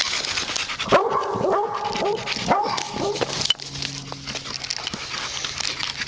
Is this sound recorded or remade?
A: recorded